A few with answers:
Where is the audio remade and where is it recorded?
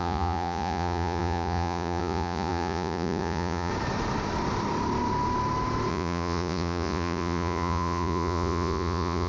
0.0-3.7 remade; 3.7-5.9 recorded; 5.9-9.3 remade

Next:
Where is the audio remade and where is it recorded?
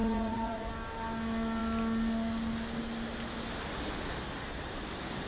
0.0-0.7 remade; 0.7-5.3 recorded